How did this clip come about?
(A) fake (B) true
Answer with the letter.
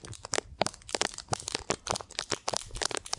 B